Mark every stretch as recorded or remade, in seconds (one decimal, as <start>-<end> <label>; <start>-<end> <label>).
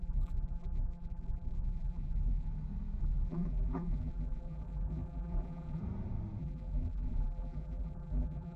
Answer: 0.0-2.5 remade; 2.5-3.0 recorded; 3.0-5.8 remade; 5.8-6.4 recorded; 6.4-8.6 remade